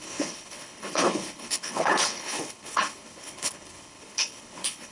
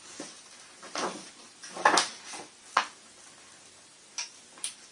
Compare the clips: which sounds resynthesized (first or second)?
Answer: first